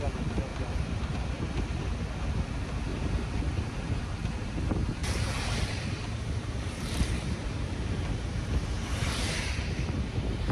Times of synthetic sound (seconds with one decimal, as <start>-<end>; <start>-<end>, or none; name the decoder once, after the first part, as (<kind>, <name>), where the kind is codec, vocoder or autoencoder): 0.5-1.4 (vocoder, BigVGAN v2); 2.9-4.0; 5.0-9.1